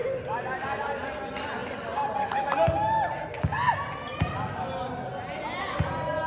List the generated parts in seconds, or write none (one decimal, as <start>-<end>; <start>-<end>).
none